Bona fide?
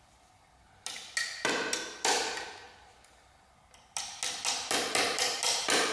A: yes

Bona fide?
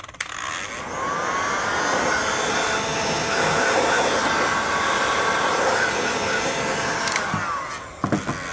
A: yes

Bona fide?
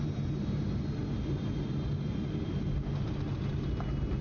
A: yes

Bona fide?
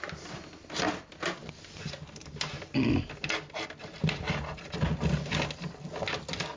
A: yes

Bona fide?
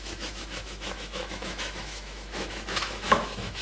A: no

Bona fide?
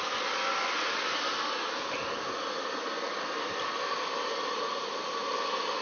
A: yes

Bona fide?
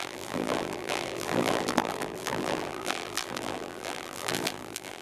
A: no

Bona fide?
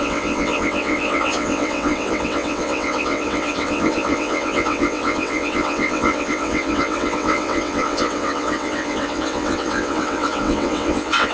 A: no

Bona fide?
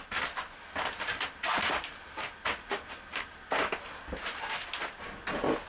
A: yes